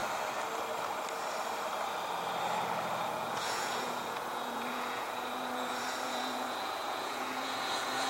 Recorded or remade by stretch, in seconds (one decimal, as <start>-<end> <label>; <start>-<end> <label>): 0.0-3.1 recorded; 3.1-8.1 remade